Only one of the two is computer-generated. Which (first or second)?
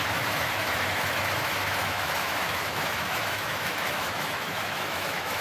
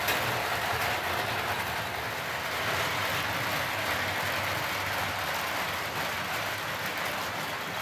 first